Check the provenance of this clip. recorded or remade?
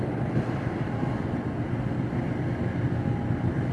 recorded